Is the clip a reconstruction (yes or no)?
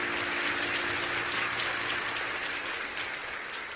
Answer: no